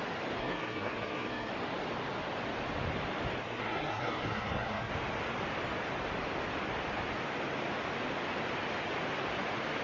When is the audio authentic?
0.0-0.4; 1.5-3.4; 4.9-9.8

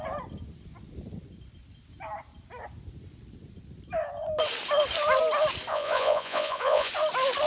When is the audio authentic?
0.0-5.7; 6.9-7.5

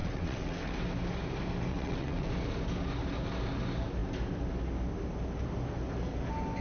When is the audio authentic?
0.8-1.7; 2.3-6.6

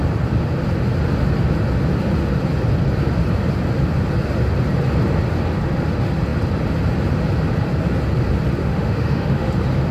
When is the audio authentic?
0.0-8.6; 9.5-9.9

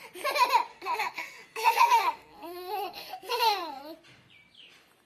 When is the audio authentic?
0.0-0.7; 3.8-5.1